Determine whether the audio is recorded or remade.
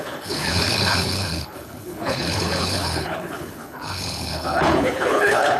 remade